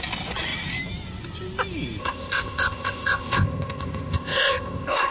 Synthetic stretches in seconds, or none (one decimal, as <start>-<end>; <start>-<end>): 2.0-5.1